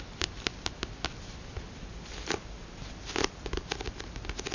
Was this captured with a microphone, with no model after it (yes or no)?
yes